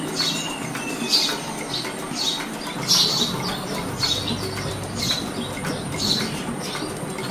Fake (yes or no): no